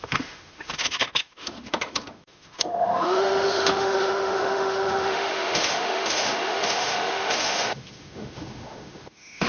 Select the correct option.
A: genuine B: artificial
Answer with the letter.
B